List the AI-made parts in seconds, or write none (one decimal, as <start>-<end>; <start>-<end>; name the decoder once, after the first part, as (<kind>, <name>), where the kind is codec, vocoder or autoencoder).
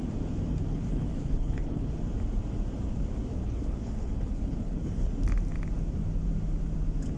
0.7-1.9 (codec, HILCodec); 3.4-5.1